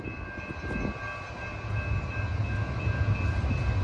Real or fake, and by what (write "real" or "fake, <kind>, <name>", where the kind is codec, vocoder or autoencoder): real